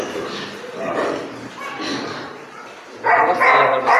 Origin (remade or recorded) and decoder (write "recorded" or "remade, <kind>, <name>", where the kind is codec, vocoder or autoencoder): recorded